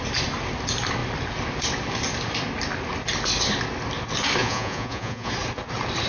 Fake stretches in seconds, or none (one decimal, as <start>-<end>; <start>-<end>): 4.4-5.3